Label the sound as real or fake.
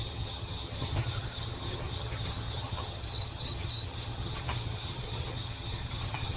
fake